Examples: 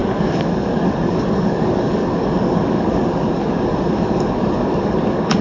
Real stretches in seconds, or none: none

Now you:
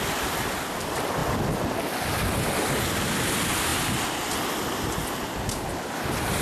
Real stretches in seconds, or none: 0.0-6.4

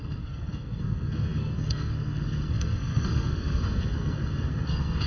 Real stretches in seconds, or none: none

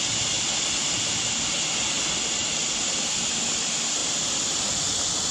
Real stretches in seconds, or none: 0.0-5.3